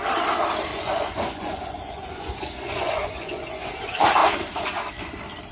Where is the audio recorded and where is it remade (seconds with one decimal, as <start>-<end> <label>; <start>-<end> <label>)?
0.0-0.7 recorded; 0.7-3.7 remade; 3.7-5.5 recorded